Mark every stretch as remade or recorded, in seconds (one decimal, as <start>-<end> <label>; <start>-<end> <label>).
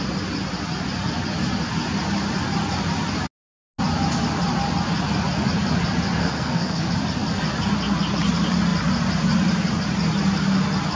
0.0-6.2 recorded; 6.2-6.9 remade; 6.9-11.0 recorded